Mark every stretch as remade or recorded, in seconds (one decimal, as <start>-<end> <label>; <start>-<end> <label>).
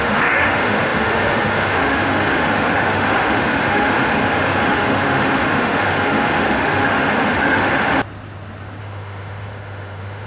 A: 0.0-8.0 remade; 8.0-8.8 recorded; 8.8-10.3 remade